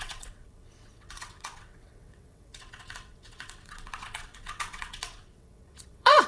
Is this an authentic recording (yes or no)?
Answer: no